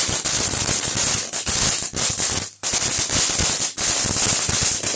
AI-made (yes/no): no